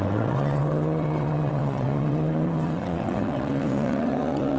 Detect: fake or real fake